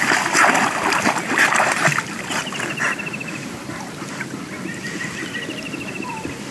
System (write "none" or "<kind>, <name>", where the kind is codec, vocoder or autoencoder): none